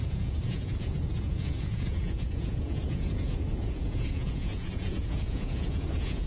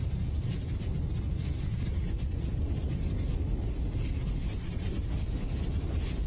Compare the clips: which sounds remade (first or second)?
first